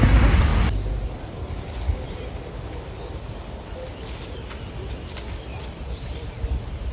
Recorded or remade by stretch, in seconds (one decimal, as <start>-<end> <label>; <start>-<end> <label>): 0.0-6.9 recorded